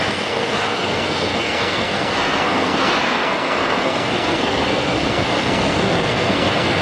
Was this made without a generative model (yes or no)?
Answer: no